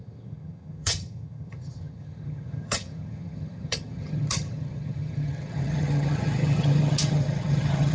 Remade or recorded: remade